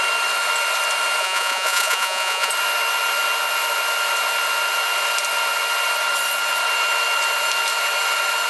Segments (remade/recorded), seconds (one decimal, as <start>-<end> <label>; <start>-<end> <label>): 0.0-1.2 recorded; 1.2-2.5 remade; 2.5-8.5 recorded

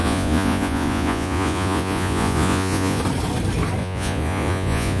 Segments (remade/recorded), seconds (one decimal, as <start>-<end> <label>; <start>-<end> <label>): 0.0-3.0 remade; 3.0-3.8 recorded; 3.8-5.0 remade

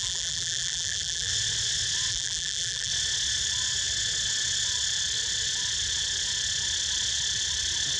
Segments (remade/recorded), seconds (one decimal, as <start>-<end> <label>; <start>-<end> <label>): 0.0-1.3 remade; 1.3-2.1 recorded; 2.1-2.9 remade; 2.9-8.0 recorded